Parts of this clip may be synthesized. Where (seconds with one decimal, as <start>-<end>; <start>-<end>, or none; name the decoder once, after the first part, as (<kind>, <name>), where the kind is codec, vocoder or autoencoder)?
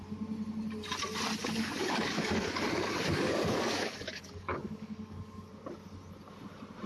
1.4-5.5 (codec, DAC)